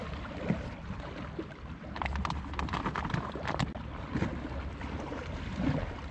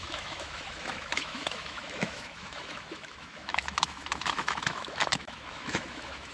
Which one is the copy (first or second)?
second